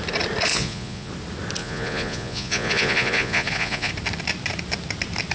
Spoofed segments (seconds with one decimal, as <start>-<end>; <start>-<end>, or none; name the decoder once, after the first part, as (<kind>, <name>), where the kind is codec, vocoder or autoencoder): 0.5-1.1 (vocoder, Vocos); 1.6-3.9